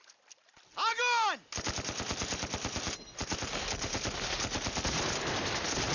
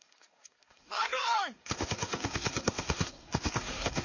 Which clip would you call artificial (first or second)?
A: second